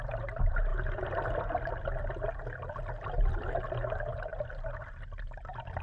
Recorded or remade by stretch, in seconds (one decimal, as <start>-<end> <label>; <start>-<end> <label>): 0.0-5.8 recorded